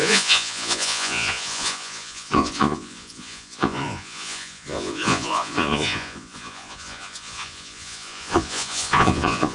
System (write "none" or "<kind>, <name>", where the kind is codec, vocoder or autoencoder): vocoder, Vocos